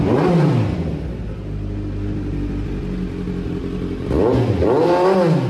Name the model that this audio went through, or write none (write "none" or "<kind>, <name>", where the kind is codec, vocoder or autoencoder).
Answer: none